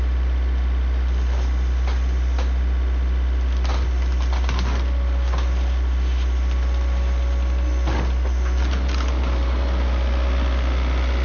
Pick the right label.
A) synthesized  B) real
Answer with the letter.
B